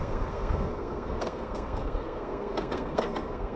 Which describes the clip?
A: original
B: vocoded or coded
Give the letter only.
B